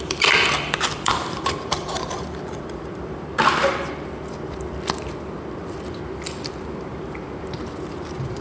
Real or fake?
fake